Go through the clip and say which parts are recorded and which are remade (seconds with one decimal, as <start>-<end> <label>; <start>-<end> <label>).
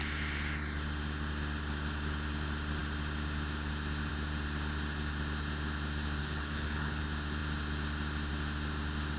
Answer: 0.0-6.2 recorded; 6.2-7.0 remade; 7.0-9.2 recorded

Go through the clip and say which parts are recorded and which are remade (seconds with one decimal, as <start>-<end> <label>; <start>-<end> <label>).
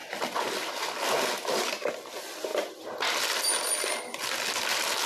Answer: 0.0-5.1 recorded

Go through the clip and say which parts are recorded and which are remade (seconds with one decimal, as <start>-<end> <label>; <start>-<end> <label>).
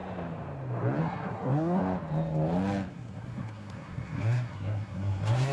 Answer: 0.0-1.0 recorded; 1.0-1.8 remade; 1.8-2.9 recorded; 2.9-5.5 remade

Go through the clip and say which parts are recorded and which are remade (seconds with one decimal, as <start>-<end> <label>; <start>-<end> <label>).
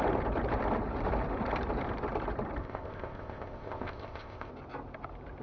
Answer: 0.0-2.6 recorded; 2.6-4.5 remade; 4.5-5.4 recorded